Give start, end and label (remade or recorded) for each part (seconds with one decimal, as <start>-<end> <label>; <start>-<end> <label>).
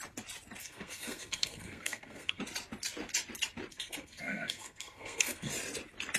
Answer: 0.0-0.6 recorded; 0.6-2.4 remade; 2.4-3.7 recorded; 3.7-5.5 remade; 5.5-6.2 recorded